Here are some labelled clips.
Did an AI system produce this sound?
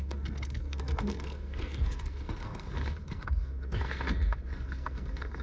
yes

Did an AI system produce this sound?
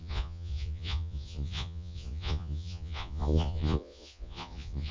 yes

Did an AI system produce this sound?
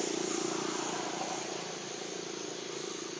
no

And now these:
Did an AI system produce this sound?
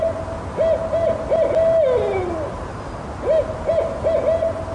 no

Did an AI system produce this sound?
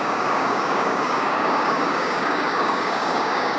yes